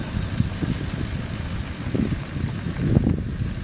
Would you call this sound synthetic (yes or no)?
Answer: no